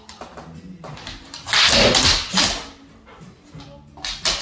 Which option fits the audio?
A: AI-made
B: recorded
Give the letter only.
B